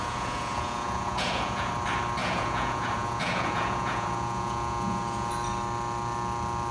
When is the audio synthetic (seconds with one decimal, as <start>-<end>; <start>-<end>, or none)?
0.0-1.7; 2.2-5.3